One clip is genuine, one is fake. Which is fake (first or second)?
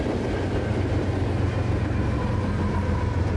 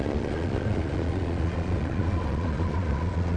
second